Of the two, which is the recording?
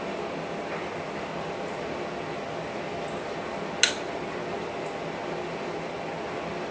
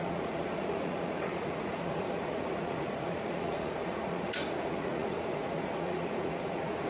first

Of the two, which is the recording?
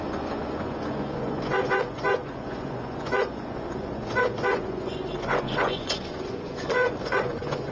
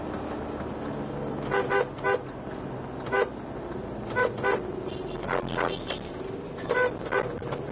second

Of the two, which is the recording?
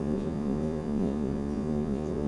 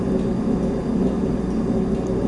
second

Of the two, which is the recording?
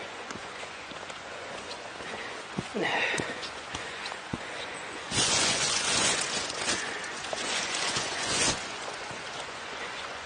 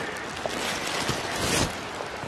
second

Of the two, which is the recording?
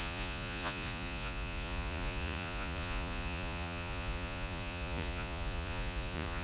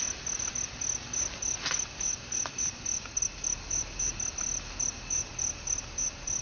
second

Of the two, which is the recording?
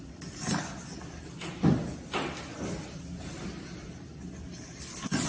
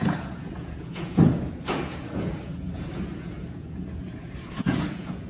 first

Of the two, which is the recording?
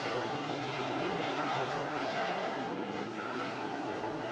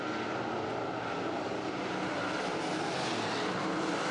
second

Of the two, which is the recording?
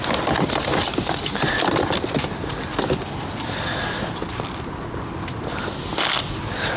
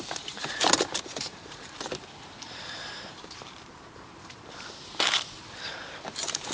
first